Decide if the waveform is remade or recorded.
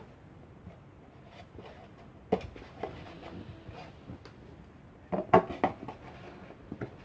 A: recorded